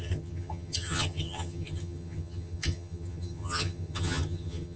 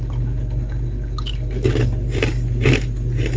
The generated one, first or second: first